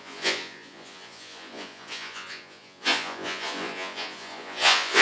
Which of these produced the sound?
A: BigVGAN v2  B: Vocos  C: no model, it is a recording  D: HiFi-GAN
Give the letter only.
B